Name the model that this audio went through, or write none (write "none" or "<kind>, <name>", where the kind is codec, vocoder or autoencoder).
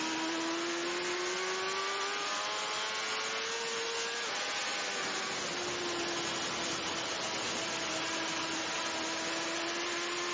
none